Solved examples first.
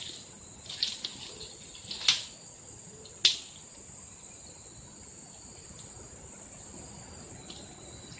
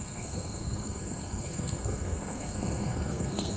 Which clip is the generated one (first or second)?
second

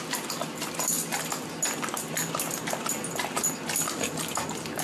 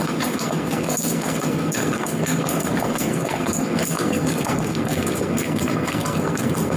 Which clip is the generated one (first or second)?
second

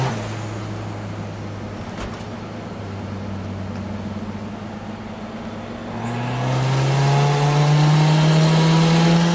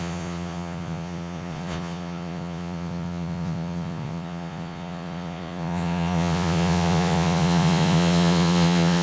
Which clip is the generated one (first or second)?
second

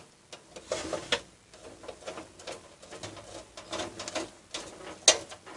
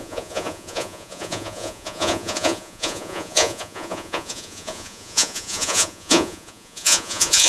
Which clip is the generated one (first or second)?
second